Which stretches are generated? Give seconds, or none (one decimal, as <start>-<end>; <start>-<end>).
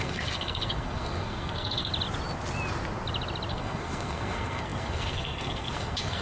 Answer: 0.0-1.9; 3.5-6.2